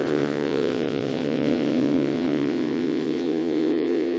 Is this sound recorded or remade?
remade